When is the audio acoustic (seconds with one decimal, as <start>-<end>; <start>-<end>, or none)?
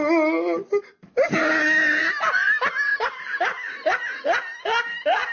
0.0-2.9; 3.7-5.3